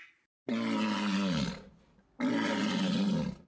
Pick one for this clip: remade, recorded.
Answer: recorded